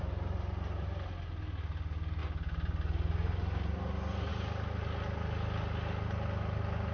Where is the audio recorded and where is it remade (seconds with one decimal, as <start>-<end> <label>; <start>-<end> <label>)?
0.0-6.9 recorded